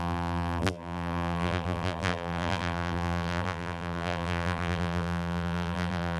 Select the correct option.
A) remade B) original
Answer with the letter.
A